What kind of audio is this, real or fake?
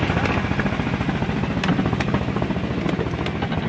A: real